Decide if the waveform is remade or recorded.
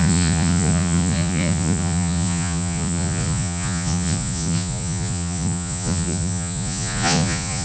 remade